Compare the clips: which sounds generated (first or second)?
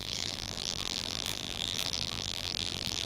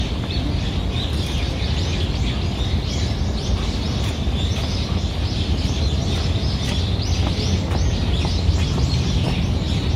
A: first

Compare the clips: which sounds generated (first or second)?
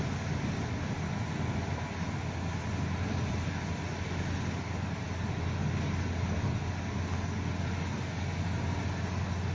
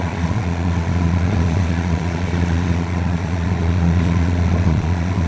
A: second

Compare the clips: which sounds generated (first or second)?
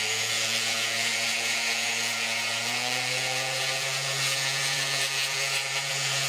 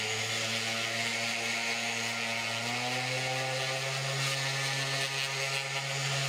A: first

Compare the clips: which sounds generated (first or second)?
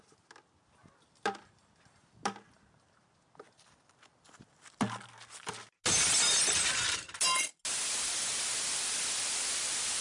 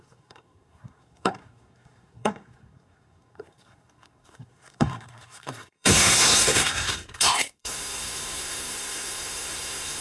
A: second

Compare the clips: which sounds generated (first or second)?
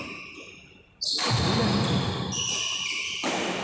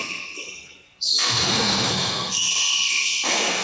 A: second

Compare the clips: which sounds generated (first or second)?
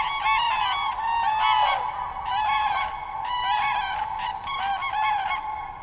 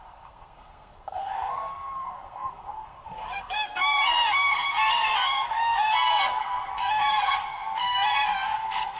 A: second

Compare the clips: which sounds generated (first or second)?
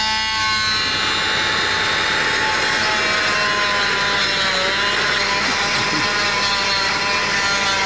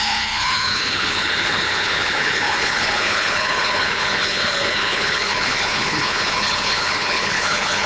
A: second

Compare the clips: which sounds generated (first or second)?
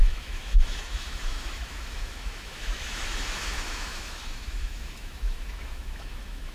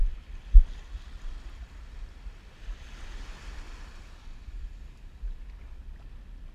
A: first